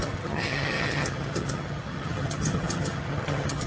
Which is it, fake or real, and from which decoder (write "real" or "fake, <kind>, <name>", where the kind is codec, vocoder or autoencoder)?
fake, vocoder, HiFi-GAN